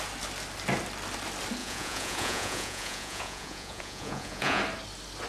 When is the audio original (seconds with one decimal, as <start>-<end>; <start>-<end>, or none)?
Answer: 0.0-1.6; 4.6-5.3